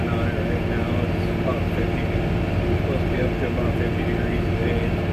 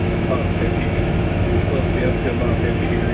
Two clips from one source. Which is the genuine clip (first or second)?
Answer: first